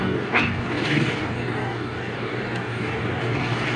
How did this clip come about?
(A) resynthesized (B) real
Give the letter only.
A